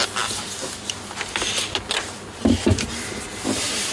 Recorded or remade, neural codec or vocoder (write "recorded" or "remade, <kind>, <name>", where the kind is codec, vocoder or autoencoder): recorded